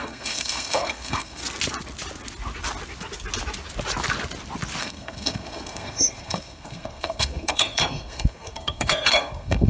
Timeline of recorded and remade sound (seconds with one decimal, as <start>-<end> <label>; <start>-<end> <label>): 0.0-1.4 remade; 1.4-4.8 recorded; 4.8-9.7 remade